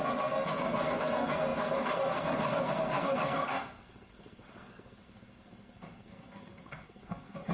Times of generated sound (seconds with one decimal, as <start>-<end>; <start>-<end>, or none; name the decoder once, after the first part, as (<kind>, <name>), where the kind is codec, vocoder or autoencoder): 0.0-7.5 (codec, SNAC)